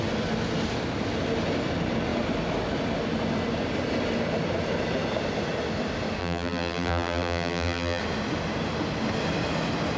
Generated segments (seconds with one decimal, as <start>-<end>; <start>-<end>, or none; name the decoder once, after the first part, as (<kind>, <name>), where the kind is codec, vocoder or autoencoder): 6.2-8.0 (vocoder, BigVGAN v2)